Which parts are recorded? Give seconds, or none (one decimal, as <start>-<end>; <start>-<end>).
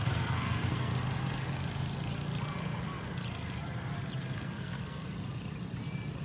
0.9-4.2; 5.0-6.2